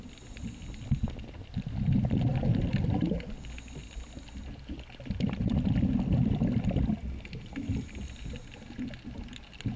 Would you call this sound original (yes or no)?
yes